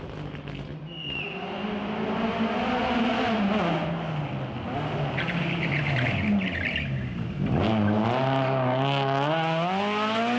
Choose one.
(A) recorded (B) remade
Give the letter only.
A